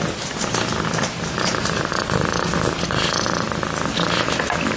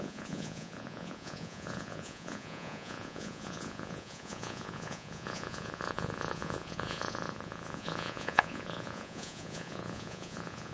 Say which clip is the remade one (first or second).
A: second